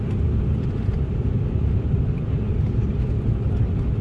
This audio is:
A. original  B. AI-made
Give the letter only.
A